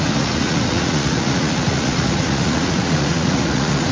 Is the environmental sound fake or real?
fake